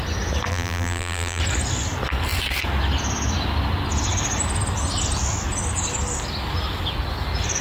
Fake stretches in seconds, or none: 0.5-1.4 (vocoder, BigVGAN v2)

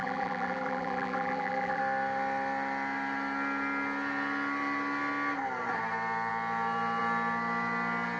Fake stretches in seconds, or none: 0.0-1.8 (vocoder, BigVGAN v2)

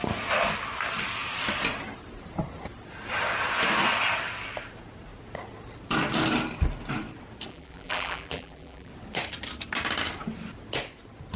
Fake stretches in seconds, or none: 7.5-8.9 (vocoder, BigVGAN v2)

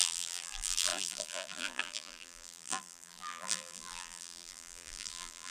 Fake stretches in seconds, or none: 0.0-5.5 (vocoder, BigVGAN v2)

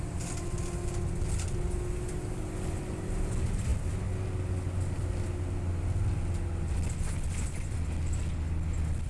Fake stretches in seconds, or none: none